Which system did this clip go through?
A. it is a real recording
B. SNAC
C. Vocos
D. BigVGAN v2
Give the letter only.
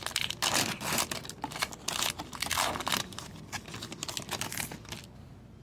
A